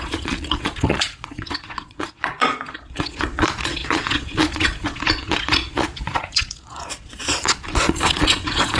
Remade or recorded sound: remade